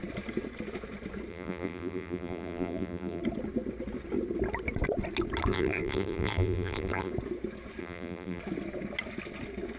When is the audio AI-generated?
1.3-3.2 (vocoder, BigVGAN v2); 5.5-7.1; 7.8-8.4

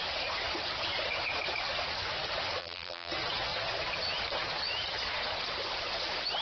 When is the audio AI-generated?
2.6-3.1 (vocoder, BigVGAN v2)

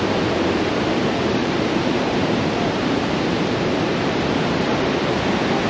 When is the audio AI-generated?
1.4-4.3 (vocoder, BigVGAN v2)